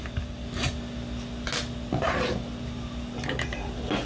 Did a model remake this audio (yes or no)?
no